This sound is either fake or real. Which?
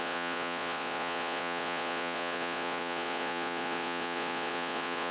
fake